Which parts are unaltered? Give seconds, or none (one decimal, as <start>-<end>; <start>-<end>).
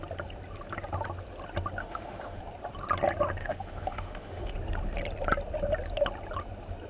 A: 0.0-1.8; 2.4-3.4; 4.5-6.9